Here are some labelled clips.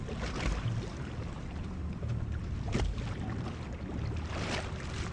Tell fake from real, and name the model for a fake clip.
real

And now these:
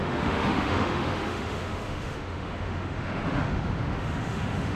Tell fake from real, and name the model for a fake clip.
fake, autoencoder, DAC-VAE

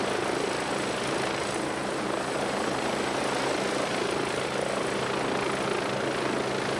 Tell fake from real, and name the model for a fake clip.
real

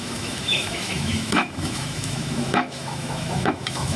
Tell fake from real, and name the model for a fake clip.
fake, autoencoder, DAC-VAE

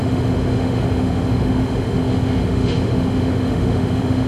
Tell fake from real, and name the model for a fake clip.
fake, autoencoder, DAC-VAE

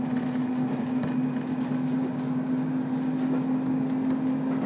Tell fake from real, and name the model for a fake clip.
real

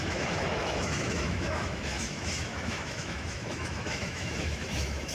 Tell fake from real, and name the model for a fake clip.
fake, autoencoder, DAC-VAE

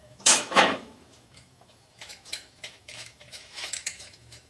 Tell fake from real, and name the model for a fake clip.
fake, autoencoder, DAC-VAE